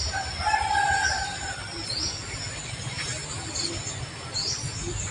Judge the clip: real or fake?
real